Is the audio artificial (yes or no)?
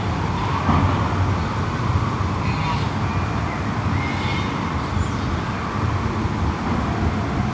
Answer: no